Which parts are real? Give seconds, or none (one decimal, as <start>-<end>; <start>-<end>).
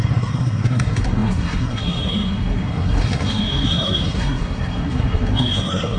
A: none